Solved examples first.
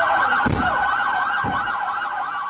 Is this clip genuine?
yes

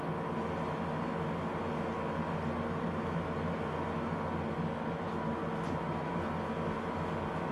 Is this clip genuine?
yes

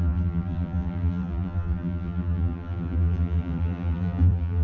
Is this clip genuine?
no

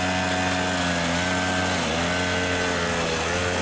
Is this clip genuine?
yes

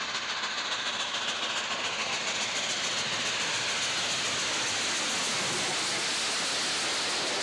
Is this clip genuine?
yes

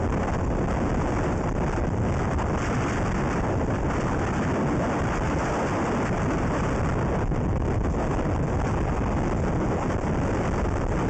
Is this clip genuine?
yes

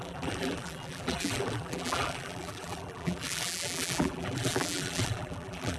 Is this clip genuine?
no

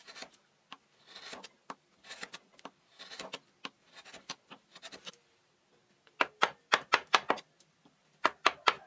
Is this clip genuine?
yes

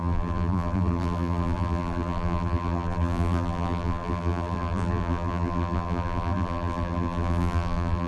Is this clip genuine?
no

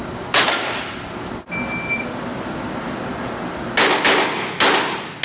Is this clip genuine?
yes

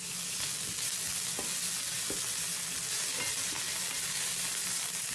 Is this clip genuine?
yes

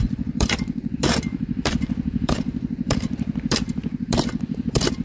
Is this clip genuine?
no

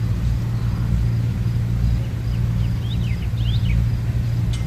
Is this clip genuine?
yes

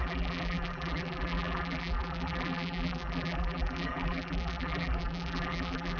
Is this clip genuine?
no